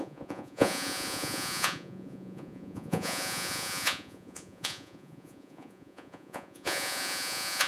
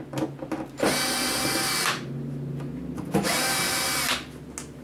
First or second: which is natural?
second